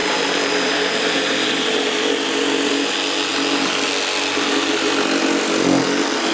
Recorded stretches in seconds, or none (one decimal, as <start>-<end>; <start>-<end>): 2.9-6.3